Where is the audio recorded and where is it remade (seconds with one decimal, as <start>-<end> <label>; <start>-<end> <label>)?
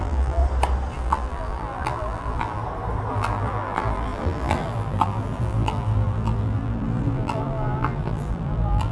0.0-0.4 remade; 0.4-0.9 recorded; 0.9-2.6 remade; 2.6-3.1 recorded; 3.1-8.9 remade